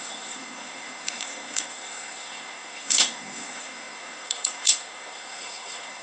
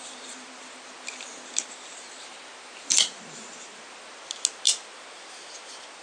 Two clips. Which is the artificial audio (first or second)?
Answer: first